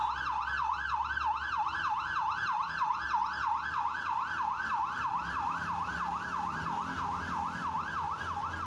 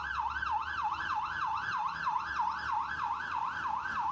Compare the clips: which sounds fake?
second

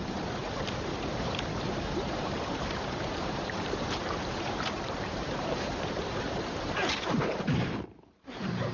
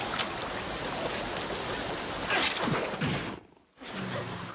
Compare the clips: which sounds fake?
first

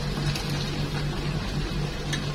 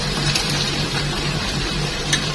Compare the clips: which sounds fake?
second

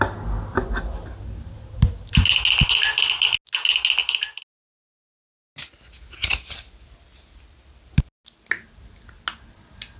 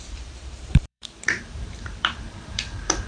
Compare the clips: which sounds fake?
second